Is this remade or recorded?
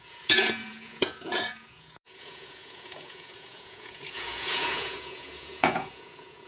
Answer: remade